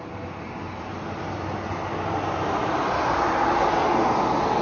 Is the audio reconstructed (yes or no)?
no